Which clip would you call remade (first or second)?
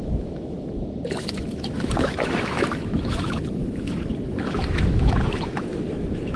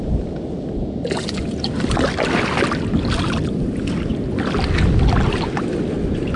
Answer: first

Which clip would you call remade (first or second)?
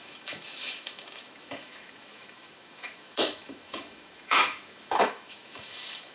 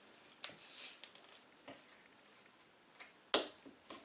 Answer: first